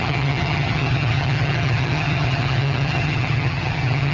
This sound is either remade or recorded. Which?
remade